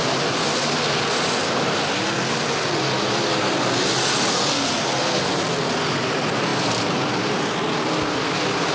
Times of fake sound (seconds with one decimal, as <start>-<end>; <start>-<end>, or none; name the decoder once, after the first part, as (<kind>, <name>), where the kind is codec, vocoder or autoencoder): none